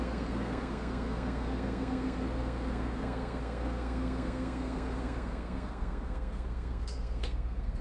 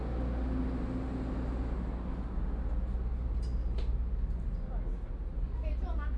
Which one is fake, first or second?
first